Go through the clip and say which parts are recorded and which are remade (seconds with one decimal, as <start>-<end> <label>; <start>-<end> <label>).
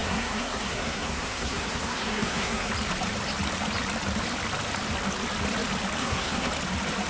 0.0-2.7 remade; 2.7-6.0 recorded; 6.0-6.5 remade; 6.5-7.1 recorded